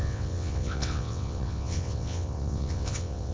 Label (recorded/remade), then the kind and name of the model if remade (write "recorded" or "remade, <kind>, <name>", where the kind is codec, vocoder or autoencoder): remade, vocoder, WaveNeXt